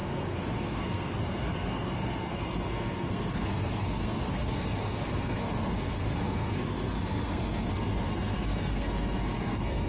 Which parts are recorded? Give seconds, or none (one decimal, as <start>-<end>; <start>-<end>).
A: none